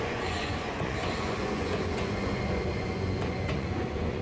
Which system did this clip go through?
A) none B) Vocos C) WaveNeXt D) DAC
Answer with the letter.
B